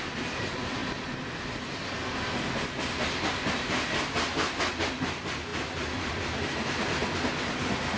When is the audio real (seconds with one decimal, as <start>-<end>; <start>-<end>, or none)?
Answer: 0.0-8.0